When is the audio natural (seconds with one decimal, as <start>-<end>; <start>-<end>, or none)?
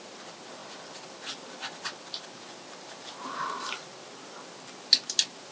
0.0-5.5